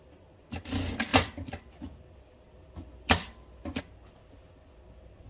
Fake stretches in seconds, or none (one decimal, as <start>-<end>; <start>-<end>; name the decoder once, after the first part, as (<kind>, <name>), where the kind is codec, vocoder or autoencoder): 1.1-3.8 (vocoder, BigVGAN v2)